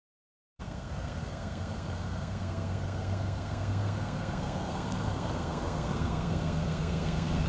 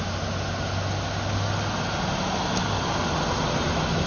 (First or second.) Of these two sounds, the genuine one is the second